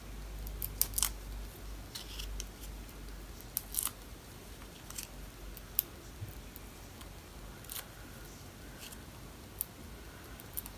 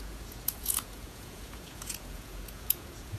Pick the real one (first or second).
first